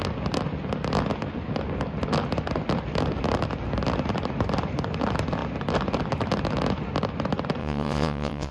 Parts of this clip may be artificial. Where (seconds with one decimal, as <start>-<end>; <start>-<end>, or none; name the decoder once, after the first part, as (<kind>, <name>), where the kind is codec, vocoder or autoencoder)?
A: 7.6-8.5 (vocoder, WaveNeXt)